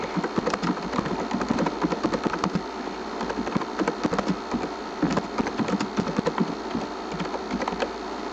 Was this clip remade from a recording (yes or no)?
yes